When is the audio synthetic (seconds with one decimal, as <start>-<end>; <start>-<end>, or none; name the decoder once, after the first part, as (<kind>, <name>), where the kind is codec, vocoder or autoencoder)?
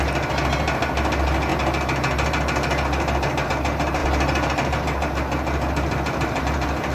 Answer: none